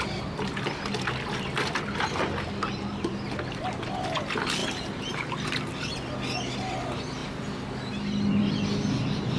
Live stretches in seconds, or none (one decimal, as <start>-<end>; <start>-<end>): 0.0-9.4